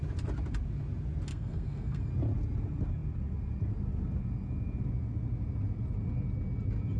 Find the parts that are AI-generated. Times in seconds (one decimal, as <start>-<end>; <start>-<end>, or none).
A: 1.3-2.1